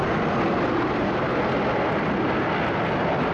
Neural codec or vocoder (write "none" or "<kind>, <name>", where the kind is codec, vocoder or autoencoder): none